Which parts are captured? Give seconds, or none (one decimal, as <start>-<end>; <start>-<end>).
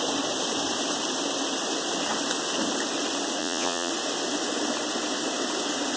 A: 0.0-3.4; 3.9-6.0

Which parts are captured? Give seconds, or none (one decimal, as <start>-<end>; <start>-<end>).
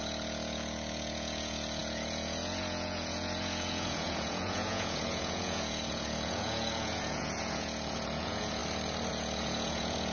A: 8.6-9.1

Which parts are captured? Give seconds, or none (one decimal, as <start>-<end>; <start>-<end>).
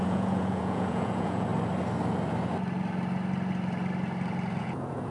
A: 1.5-4.6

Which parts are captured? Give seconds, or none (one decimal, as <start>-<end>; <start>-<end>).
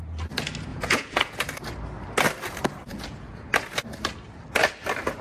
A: 0.0-0.7; 1.4-2.9; 3.5-5.2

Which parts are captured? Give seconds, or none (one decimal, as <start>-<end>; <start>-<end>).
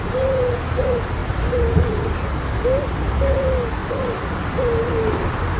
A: 0.0-5.6